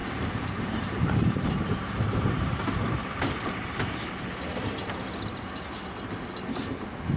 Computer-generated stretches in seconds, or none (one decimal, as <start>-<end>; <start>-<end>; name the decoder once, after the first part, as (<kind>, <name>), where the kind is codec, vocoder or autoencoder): 0.0-4.1 (vocoder, BigVGAN v2)